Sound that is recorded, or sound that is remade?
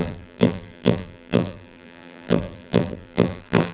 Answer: remade